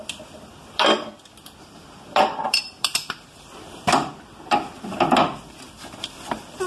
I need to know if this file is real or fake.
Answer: fake